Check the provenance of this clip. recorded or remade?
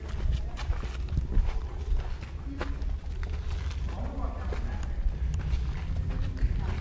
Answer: recorded